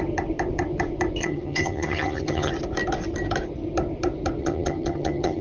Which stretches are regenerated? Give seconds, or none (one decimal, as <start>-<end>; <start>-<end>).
1.2-2.5; 4.4-5.4